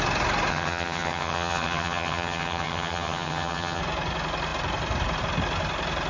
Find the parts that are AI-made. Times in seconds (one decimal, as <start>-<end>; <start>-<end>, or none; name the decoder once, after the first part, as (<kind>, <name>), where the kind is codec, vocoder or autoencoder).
0.5-3.8 (vocoder, HiFi-GAN)